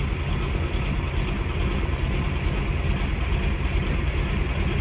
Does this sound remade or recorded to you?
recorded